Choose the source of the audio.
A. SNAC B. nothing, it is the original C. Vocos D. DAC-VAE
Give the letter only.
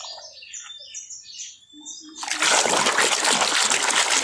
B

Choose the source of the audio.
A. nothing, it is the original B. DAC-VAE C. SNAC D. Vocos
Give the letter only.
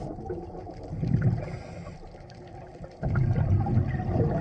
A